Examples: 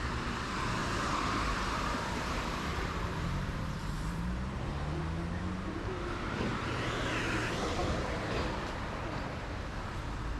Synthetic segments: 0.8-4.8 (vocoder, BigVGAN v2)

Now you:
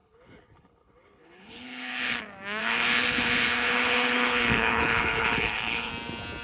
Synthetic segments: 0.0-2.2 (codec, HILCodec); 2.6-5.9

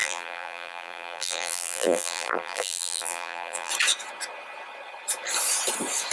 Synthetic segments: 0.0-3.7 (vocoder, BigVGAN v2)

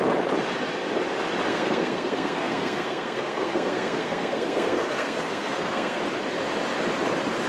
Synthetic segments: 1.5-6.0 (codec, SNAC)

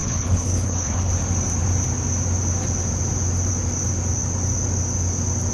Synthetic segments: 0.0-1.1 (codec, HILCodec)

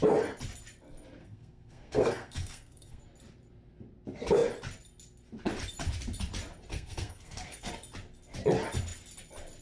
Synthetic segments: 1.2-3.0 (codec, SNAC); 6.7-7.7

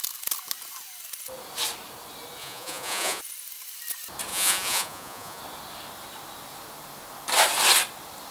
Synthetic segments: 2.4-3.2 (vocoder, Vocos); 4.3-5.4

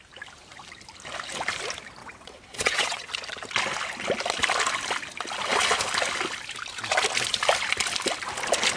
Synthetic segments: 2.0-3.1 (vocoder, WaveNeXt)